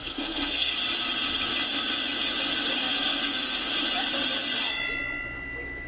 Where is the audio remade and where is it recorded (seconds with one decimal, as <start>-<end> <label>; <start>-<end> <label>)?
0.0-0.7 remade; 0.7-2.8 recorded; 2.8-3.7 remade; 3.7-5.9 recorded